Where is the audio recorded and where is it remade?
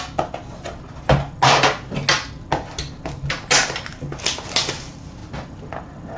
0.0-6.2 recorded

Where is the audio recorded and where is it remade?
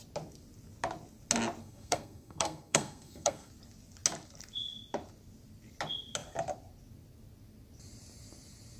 0.0-1.6 recorded; 1.6-3.5 remade; 3.5-8.8 recorded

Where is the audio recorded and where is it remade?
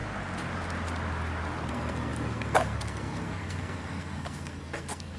0.0-1.7 recorded; 1.7-5.2 remade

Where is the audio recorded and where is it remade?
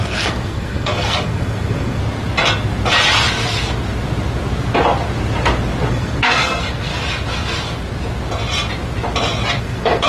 0.0-2.0 remade; 2.0-5.9 recorded; 5.9-6.9 remade; 6.9-9.6 recorded; 9.6-10.1 remade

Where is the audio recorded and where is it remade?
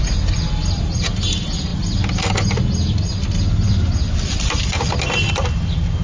0.0-6.0 recorded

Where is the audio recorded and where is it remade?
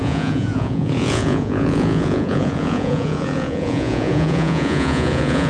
0.0-5.5 remade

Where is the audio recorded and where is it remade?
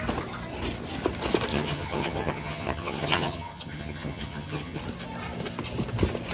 0.0-1.5 recorded; 1.5-4.8 remade; 4.8-6.3 recorded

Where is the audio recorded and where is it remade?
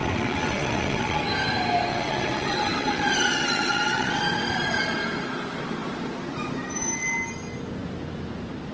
0.0-1.2 remade; 1.2-1.9 recorded; 1.9-4.2 remade; 4.2-8.7 recorded